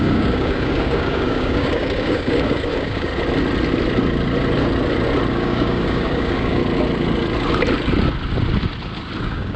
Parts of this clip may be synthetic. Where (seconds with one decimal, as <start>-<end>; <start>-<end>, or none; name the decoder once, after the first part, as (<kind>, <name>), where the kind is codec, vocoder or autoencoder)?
0.0-3.1 (codec, DAC); 5.3-6.6; 9.2-9.6